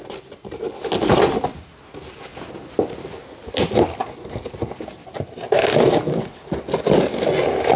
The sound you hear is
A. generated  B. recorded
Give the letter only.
B